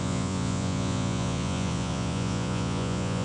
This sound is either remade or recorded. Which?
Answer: remade